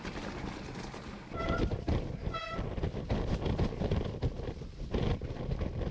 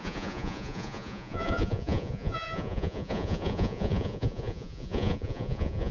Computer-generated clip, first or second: second